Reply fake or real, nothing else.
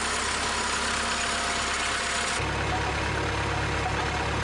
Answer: real